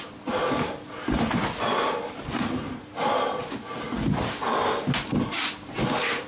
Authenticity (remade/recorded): recorded